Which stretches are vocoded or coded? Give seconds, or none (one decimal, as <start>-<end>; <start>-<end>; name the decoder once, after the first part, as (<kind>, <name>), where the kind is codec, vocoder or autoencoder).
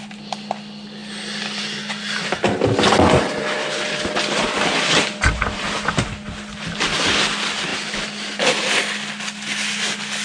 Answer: none